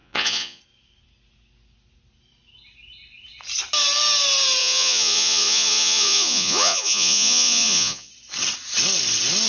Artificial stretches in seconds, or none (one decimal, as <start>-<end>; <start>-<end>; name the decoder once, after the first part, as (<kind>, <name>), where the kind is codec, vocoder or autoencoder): 0.0-0.6 (vocoder, Vocos); 4.6-8.1